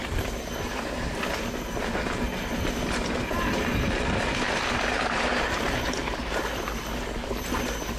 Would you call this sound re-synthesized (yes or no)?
no